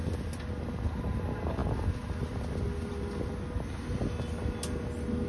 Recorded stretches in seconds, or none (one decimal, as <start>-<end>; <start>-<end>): 0.0-5.3